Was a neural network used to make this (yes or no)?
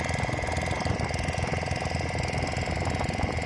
no